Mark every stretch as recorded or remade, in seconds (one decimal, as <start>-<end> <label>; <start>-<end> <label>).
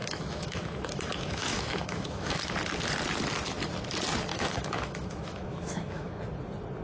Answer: 0.0-2.4 remade; 2.4-4.3 recorded; 4.3-6.2 remade; 6.2-6.8 recorded